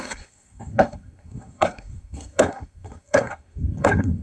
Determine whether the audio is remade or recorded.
remade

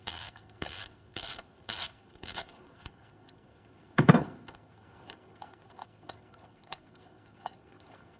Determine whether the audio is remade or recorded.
remade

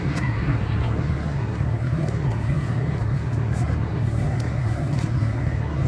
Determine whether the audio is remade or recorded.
remade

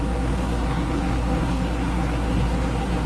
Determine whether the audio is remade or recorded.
remade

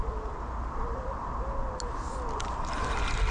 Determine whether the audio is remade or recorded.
recorded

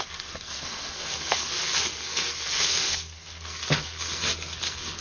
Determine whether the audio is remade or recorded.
remade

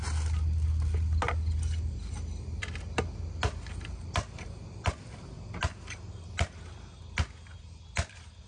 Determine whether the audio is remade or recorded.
recorded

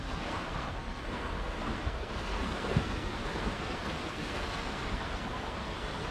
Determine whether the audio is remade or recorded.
remade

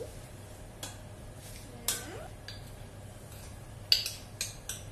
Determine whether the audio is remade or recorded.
recorded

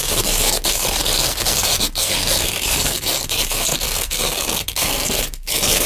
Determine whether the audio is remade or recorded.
remade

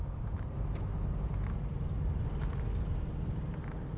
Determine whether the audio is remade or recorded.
recorded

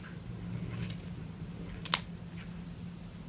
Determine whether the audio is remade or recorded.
recorded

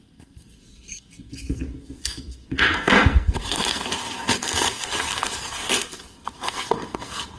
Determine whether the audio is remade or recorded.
remade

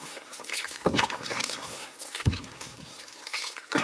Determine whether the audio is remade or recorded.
remade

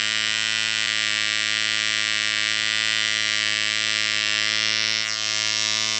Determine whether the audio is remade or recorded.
recorded